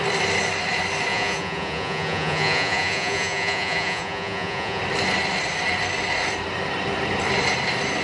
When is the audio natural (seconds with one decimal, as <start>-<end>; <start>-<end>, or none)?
0.0-1.1; 4.8-8.0